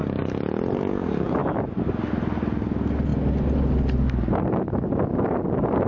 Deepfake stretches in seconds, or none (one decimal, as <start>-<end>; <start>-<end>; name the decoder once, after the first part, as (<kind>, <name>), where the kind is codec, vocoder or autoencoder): none